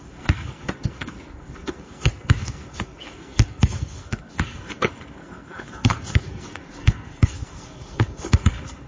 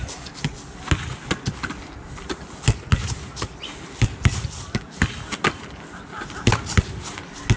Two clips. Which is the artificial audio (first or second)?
first